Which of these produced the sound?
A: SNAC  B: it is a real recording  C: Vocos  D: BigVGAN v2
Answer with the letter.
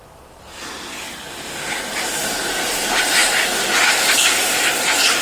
D